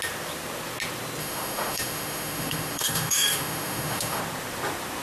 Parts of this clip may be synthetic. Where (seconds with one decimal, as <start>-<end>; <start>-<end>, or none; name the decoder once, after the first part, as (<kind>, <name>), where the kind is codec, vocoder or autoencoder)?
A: 1.2-4.2 (autoencoder, DAC-VAE)